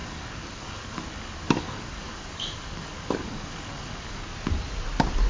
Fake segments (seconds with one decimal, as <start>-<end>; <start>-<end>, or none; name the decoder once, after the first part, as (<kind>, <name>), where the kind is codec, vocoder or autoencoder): 0.0-4.3 (codec, DAC)